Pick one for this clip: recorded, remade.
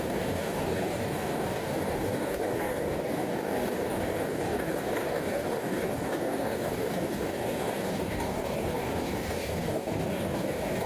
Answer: remade